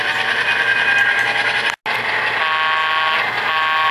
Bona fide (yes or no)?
yes